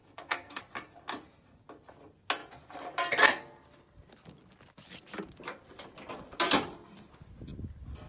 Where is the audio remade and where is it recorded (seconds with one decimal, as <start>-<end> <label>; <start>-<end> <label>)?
0.0-0.6 remade; 0.6-8.1 recorded